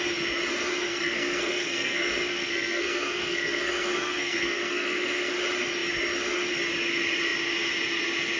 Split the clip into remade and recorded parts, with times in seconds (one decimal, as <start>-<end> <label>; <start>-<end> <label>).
0.0-0.9 recorded; 0.9-5.3 remade; 5.3-8.4 recorded